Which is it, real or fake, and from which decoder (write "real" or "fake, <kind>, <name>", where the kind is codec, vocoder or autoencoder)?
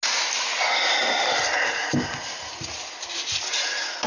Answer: real